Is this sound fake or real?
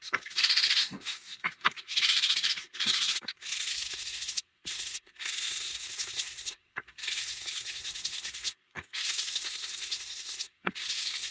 fake